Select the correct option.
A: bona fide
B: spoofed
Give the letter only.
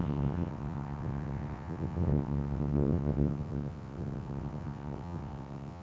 B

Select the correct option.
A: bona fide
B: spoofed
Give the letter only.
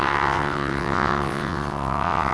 B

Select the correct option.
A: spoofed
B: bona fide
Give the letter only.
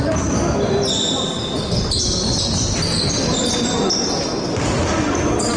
B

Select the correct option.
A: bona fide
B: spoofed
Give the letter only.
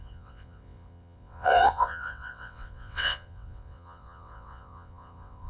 B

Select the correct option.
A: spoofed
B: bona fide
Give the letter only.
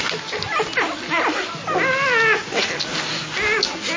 B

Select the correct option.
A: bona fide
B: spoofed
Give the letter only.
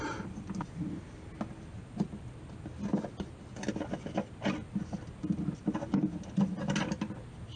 A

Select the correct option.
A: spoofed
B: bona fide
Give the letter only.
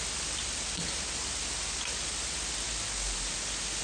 B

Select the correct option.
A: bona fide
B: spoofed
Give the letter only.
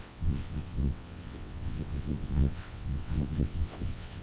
B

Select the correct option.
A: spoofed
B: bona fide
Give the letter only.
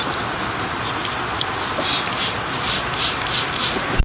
B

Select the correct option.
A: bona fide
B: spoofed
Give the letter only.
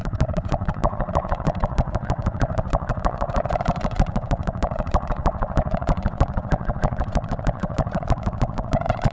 B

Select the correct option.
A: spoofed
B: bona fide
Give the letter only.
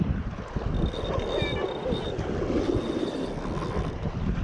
B